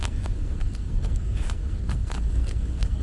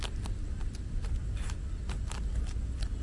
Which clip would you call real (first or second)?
second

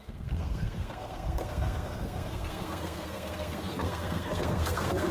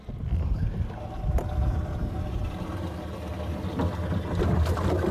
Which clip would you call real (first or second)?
second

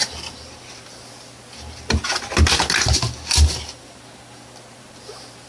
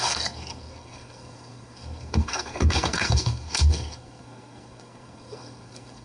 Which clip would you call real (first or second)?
first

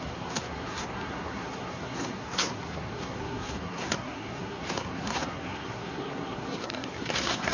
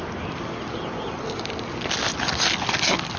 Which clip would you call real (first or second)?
second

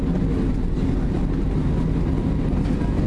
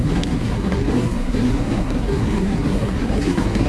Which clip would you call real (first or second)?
first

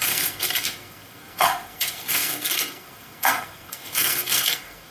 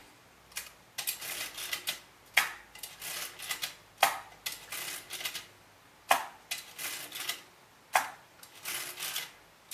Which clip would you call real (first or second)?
second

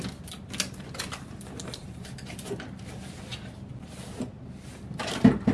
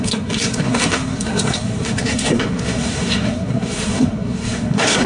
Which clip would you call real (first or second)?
first